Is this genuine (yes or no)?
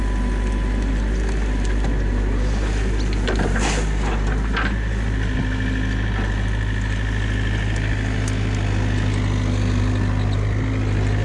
yes